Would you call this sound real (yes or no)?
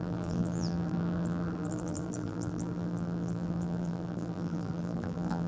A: no